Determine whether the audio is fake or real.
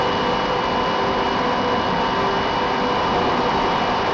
real